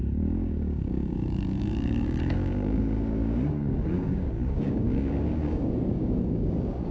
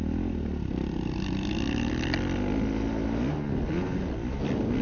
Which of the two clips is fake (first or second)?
first